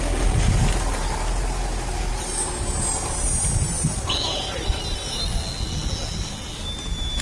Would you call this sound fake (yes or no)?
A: no